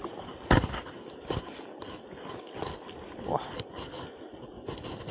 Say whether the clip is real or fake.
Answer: real